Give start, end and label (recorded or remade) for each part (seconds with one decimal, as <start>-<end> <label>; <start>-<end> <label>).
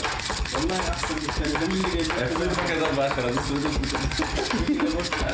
0.0-5.3 recorded